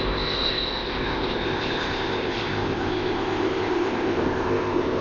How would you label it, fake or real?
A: fake